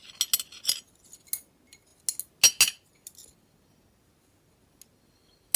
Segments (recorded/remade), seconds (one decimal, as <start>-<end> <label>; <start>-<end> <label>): 0.0-5.6 recorded